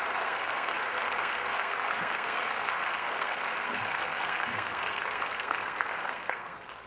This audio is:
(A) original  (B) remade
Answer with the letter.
B